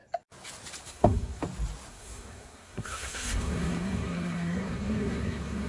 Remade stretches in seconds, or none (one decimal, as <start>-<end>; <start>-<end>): 0.9-1.4; 1.9-5.7